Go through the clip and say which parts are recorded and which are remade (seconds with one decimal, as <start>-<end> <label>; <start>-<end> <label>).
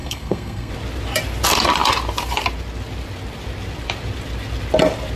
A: 0.0-0.7 remade; 0.7-5.2 recorded